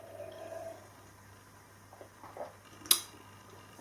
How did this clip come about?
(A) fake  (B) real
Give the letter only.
B